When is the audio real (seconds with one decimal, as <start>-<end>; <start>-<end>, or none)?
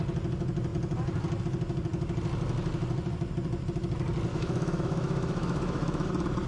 0.0-4.3; 6.1-6.5